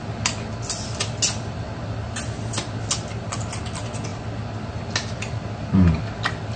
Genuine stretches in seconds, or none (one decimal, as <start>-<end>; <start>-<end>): 0.0-6.6

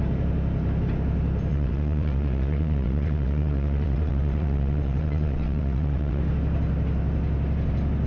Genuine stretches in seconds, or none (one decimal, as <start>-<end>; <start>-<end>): 0.0-1.5; 6.2-8.1